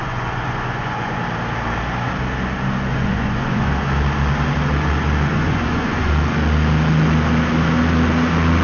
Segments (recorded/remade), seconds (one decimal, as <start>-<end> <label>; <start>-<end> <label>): 0.0-1.2 remade; 1.2-2.9 recorded; 2.9-3.7 remade; 3.7-5.3 recorded; 5.3-6.1 remade; 6.1-8.6 recorded